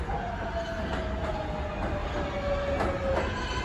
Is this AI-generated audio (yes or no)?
no